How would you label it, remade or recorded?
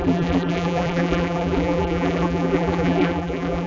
remade